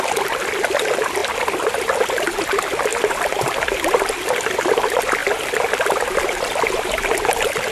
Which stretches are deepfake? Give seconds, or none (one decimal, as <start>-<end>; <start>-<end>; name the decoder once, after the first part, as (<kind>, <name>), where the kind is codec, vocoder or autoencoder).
0.0-1.2 (vocoder, BigVGAN v2); 2.1-2.9; 4.2-5.2; 5.7-7.7